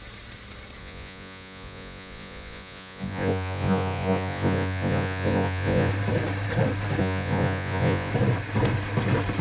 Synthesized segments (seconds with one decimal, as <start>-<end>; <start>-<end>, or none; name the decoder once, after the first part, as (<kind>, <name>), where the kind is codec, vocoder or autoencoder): 0.8-5.9 (vocoder, Vocos); 7.0-8.1